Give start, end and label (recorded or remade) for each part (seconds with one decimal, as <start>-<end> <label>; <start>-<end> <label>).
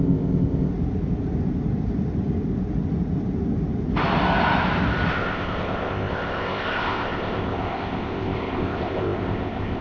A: 0.0-0.7 remade; 0.7-5.1 recorded; 5.1-9.8 remade